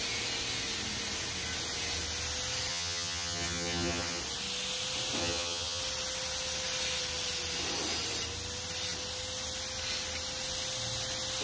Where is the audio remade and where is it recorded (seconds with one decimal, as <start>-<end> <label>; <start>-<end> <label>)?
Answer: 0.0-2.7 recorded; 2.7-4.2 remade; 4.2-5.2 recorded; 5.2-5.8 remade; 5.8-11.4 recorded